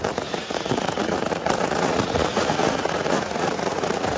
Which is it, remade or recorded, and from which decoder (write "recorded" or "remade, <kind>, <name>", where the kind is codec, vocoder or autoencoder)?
remade, vocoder, Vocos